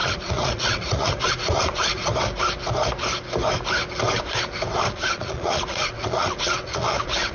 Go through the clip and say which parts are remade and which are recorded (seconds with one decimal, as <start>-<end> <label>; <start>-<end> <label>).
0.0-2.1 remade; 2.1-4.9 recorded; 4.9-7.3 remade